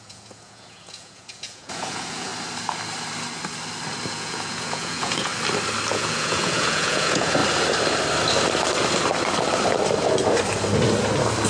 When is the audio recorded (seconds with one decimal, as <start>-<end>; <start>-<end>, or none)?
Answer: 2.3-4.1; 5.3-5.9; 7.4-11.5